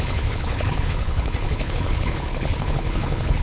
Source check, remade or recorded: remade